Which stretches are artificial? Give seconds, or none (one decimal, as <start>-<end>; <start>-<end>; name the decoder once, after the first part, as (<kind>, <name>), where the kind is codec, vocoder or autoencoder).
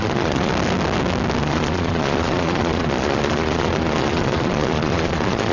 0.0-0.5 (vocoder, Vocos); 1.4-5.5